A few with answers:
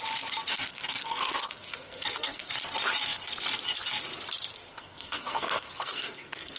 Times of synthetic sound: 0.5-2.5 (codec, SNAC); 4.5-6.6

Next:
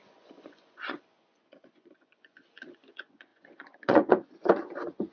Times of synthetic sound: 0.0-5.1 (vocoder, Vocos)

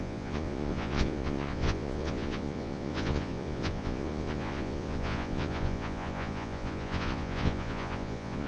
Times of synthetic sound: 0.0-8.5 (vocoder, Vocos)